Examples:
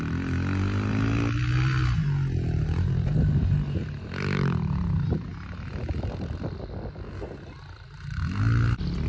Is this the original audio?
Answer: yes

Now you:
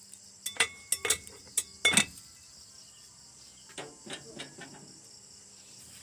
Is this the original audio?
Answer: yes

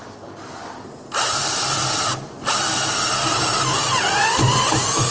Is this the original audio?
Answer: no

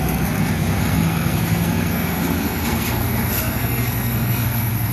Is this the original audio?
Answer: no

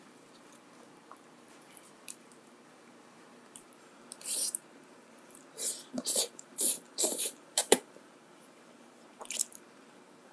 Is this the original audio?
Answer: no